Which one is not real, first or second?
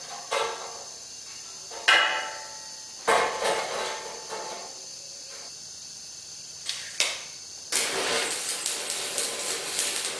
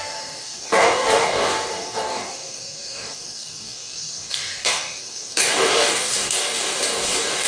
second